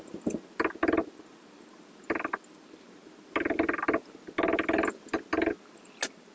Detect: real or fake real